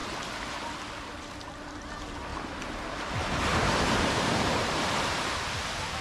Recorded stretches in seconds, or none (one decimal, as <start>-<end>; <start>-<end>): 0.0-2.3; 3.0-3.5; 5.3-6.0